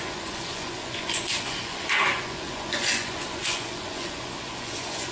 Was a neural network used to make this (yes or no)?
yes